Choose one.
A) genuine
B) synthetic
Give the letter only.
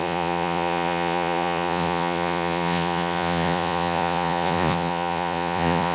B